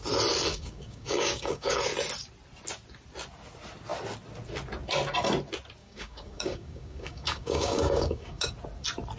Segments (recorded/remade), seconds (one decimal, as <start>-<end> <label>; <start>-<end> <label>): 0.0-0.5 recorded; 0.5-1.8 remade; 1.8-5.8 recorded; 5.8-8.5 remade; 8.5-9.2 recorded